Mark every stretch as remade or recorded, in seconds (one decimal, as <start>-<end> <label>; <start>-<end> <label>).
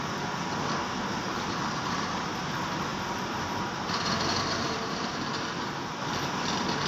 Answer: 0.0-1.1 recorded; 1.1-2.3 remade; 2.3-2.9 recorded; 2.9-6.3 remade; 6.3-6.9 recorded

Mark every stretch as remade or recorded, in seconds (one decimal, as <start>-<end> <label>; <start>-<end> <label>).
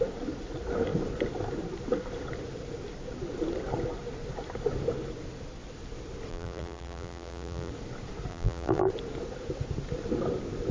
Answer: 0.0-6.3 recorded; 6.3-7.7 remade; 7.7-8.3 recorded; 8.3-8.9 remade; 8.9-10.7 recorded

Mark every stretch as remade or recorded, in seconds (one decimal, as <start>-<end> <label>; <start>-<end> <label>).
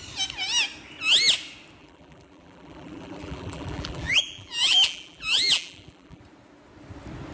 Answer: 0.0-1.8 recorded; 1.8-6.2 remade; 6.2-7.3 recorded